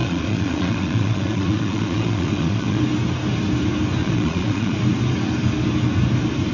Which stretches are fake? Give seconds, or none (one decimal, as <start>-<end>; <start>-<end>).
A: 0.0-2.8; 4.0-4.8